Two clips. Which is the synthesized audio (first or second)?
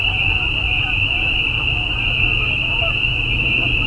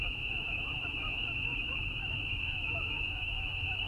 second